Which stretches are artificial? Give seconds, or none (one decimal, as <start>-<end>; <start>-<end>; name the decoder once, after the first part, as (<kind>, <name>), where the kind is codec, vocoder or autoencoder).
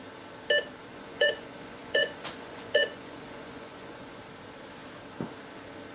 0.9-4.2 (vocoder, Vocos)